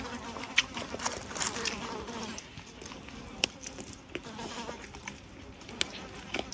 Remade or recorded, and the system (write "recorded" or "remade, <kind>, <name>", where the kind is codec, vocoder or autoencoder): recorded